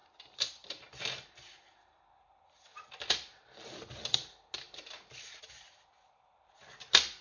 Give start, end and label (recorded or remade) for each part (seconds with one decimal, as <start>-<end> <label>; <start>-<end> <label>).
0.0-7.2 recorded